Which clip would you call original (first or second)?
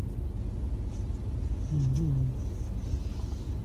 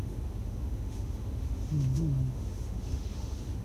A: first